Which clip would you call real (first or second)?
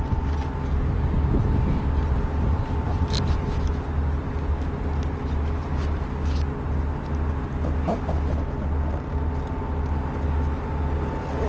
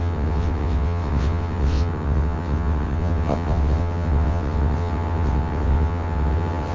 first